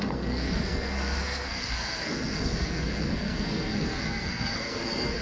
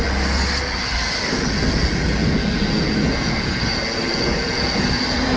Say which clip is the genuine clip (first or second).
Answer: second